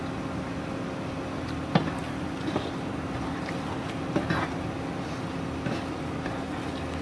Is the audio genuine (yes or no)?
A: yes